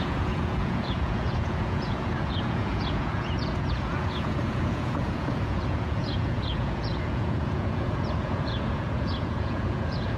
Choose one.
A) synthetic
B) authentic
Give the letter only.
A